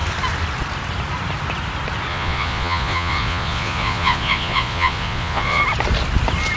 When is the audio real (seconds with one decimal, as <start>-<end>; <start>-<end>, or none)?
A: 0.0-2.1; 5.6-6.6

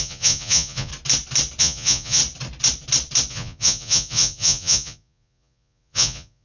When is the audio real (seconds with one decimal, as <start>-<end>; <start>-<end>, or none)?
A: 0.9-1.6; 2.2-3.3

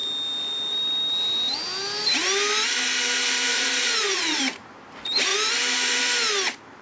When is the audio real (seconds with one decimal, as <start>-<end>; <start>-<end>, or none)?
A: 0.0-3.5; 4.4-6.8

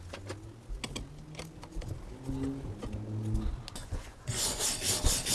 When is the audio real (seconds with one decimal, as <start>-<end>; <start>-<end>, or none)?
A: 0.0-3.8; 4.6-5.3

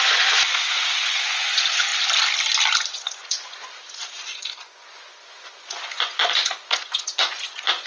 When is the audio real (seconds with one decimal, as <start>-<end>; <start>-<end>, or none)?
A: 1.9-2.9

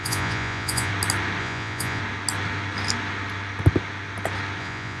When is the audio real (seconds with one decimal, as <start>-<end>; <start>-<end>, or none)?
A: 0.9-1.4; 2.0-4.6